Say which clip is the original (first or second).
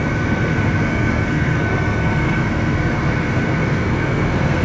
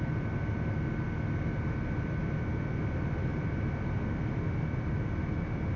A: second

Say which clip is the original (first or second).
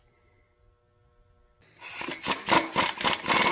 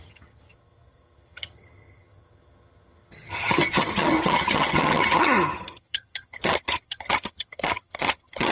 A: first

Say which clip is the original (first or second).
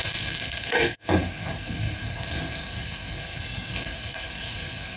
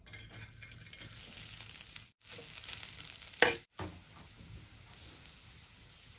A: second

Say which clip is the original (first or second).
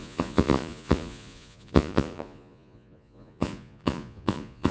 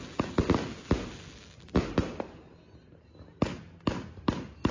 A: second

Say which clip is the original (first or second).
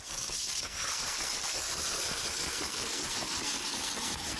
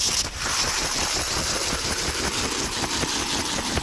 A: second